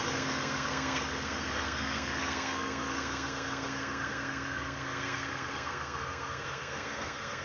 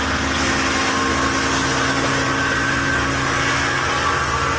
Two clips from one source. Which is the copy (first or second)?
first